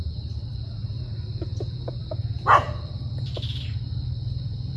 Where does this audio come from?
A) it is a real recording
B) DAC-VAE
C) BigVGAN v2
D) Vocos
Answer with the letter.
A